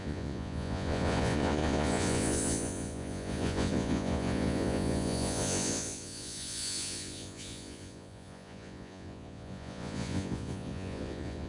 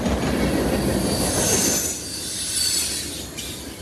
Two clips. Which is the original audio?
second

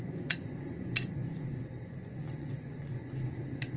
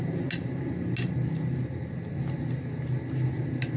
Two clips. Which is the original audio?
second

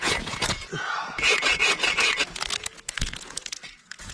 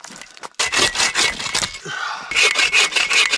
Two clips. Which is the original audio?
second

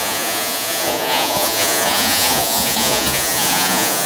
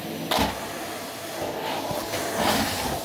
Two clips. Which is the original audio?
second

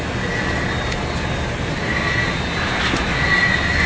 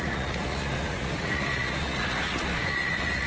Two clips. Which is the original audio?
first